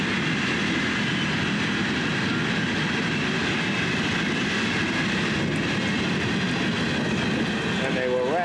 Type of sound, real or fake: real